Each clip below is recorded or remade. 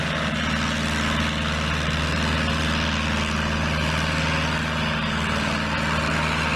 recorded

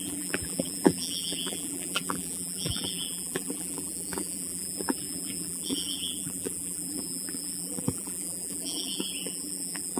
remade